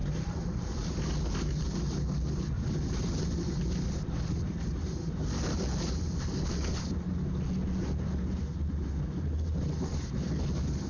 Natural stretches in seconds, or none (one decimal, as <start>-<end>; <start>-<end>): 0.0-10.9